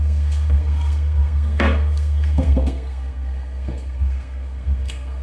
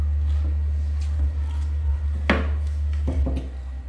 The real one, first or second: second